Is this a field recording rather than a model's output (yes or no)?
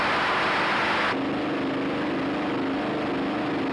yes